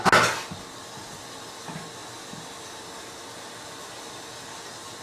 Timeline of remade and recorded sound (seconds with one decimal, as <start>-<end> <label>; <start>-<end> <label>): 0.0-5.0 recorded